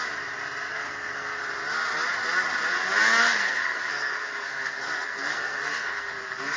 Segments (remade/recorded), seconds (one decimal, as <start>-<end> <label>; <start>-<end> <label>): 0.0-0.7 recorded; 0.7-1.4 remade; 1.4-3.2 recorded; 3.2-6.6 remade